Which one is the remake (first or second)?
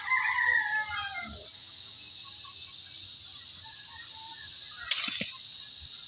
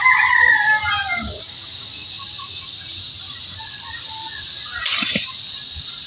second